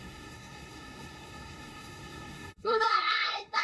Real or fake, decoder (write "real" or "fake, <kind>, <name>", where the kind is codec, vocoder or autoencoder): fake, codec, SNAC